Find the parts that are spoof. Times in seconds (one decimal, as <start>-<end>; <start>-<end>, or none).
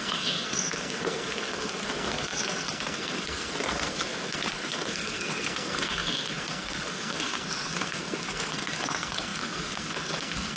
0.0-10.6